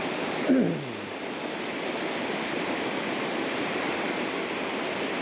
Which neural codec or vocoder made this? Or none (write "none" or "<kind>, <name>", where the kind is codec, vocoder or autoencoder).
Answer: none